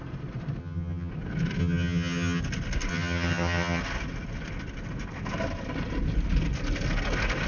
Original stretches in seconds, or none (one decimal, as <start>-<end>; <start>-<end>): 0.0-0.6; 1.1-1.6; 2.4-2.9; 3.8-7.5